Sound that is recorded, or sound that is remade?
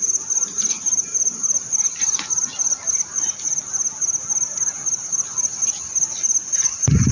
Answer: recorded